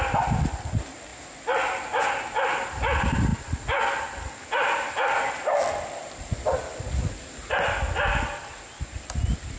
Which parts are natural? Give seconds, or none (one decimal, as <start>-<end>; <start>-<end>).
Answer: 0.0-9.6